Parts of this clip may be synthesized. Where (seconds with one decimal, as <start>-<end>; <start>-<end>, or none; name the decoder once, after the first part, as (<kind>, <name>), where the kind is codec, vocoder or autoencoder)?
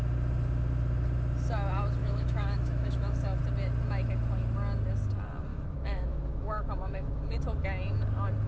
2.0-3.4 (autoencoder, DAC-VAE); 5.5-7.4